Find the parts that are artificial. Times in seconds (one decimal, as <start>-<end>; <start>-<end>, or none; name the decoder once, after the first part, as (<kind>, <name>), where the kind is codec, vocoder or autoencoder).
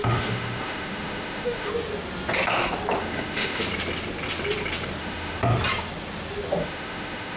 0.0-1.7 (autoencoder, DAC-VAE); 3.0-3.6; 5.0-5.4; 6.6-7.4